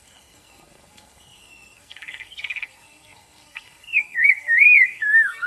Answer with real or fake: fake